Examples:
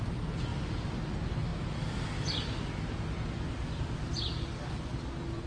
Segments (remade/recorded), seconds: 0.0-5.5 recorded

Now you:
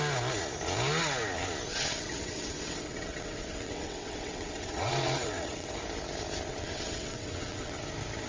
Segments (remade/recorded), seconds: 0.0-1.7 recorded; 1.7-5.8 remade; 5.8-6.5 recorded; 6.5-7.8 remade; 7.8-8.3 recorded

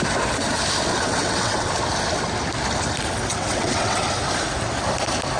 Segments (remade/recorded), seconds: 0.0-0.9 recorded; 0.9-1.7 remade; 1.7-3.3 recorded; 3.3-4.0 remade; 4.0-5.4 recorded

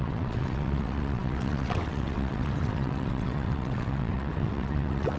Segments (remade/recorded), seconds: 0.0-5.2 remade

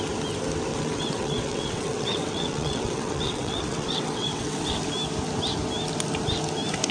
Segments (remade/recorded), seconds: 0.0-0.7 recorded; 0.7-4.8 remade; 4.8-6.9 recorded